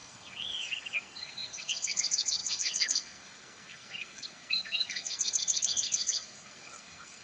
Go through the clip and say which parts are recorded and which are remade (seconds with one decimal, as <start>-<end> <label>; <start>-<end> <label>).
0.0-7.2 remade

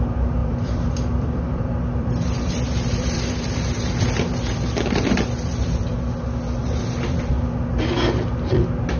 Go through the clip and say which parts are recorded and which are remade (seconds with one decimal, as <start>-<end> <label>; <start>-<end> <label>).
0.0-0.4 recorded; 0.4-3.9 remade; 3.9-4.3 recorded; 4.3-5.9 remade; 5.9-6.6 recorded; 6.6-7.3 remade; 7.3-9.0 recorded

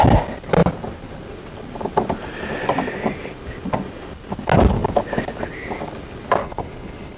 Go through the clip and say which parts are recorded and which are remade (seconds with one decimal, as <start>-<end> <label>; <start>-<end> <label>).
0.0-6.4 recorded; 6.4-7.2 remade

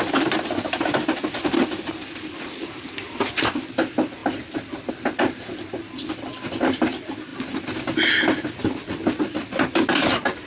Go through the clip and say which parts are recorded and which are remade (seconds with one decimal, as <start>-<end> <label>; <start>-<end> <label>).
0.0-10.5 recorded

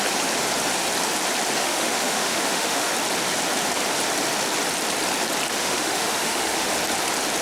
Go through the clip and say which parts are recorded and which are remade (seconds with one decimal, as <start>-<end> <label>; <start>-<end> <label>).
0.0-1.6 recorded; 1.6-2.9 remade; 2.9-5.6 recorded; 5.6-6.7 remade; 6.7-7.4 recorded

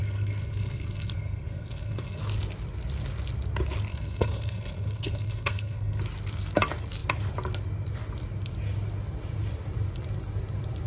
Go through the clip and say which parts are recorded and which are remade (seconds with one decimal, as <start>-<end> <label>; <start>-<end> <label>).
0.0-2.2 remade; 2.2-3.9 recorded; 3.9-6.0 remade; 6.0-10.9 recorded

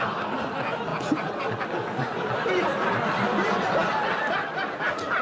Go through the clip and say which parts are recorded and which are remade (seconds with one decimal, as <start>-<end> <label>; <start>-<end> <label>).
0.0-5.2 recorded

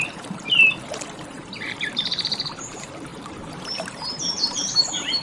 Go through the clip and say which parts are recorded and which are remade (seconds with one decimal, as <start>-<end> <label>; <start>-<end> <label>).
0.0-5.2 remade